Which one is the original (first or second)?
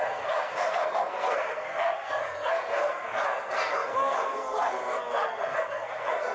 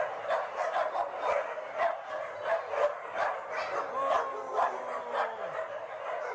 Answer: second